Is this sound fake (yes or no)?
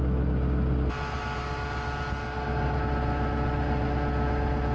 no